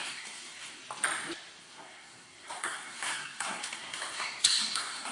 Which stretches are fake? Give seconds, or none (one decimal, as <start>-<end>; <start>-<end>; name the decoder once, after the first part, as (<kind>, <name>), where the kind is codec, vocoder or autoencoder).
0.0-0.8 (codec, SNAC); 1.6-5.1